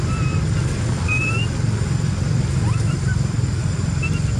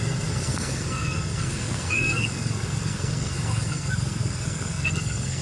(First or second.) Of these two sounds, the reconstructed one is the second